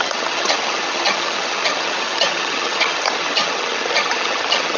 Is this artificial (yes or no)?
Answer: yes